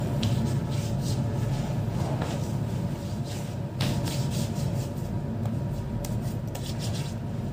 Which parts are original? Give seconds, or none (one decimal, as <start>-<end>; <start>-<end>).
0.0-7.5

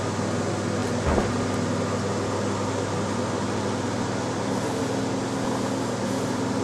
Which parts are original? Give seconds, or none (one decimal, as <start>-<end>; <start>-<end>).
0.0-6.6

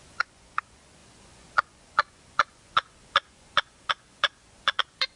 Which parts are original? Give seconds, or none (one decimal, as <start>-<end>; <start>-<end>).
none

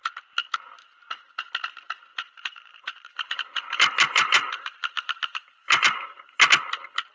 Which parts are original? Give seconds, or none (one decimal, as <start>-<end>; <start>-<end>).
0.0-2.1; 6.4-7.1

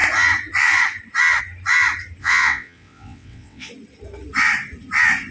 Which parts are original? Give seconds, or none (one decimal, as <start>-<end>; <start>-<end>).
0.0-2.2; 3.7-5.3